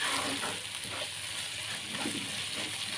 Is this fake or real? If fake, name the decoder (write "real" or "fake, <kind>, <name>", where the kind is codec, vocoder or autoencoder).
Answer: real